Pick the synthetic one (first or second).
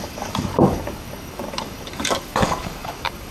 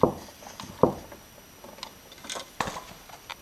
first